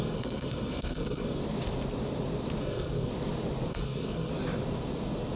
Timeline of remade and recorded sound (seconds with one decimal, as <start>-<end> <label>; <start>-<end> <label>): 0.0-1.4 remade; 1.4-2.6 recorded; 2.6-3.1 remade; 3.1-3.7 recorded; 3.7-4.3 remade; 4.3-5.4 recorded